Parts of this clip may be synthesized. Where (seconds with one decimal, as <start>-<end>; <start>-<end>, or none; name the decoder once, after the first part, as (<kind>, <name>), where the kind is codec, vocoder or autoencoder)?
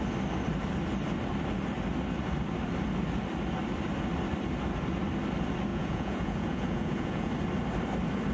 5.7-7.3 (vocoder, Vocos)